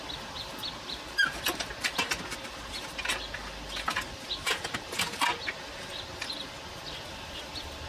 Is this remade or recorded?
recorded